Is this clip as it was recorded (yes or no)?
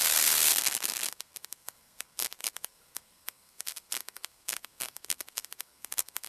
no